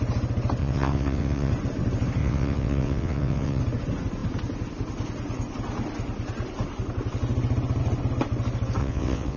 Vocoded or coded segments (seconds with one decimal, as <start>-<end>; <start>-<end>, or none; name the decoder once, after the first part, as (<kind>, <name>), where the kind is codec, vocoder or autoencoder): 0.6-1.5 (vocoder, WaveNeXt); 2.2-3.6; 8.8-9.4